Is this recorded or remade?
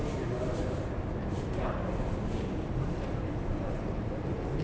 recorded